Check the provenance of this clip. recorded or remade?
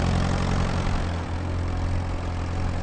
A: recorded